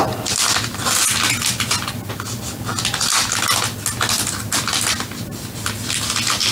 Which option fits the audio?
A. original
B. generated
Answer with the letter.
A